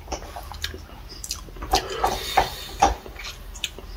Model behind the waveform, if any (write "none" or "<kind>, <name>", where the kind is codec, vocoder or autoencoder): none